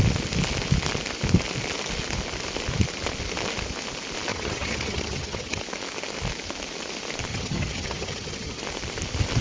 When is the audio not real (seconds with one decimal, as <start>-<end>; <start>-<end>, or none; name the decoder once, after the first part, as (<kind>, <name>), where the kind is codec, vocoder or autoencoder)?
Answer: 4.3-5.6 (vocoder, HiFi-GAN); 7.3-8.6